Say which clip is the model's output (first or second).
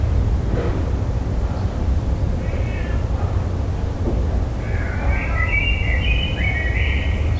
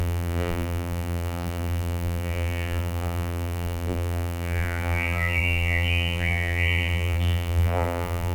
second